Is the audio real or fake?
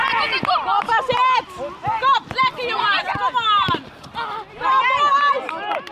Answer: real